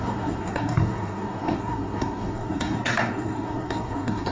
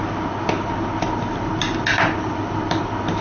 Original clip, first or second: second